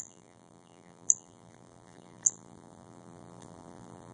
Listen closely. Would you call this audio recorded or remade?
remade